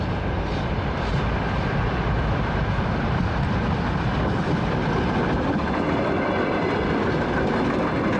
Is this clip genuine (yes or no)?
yes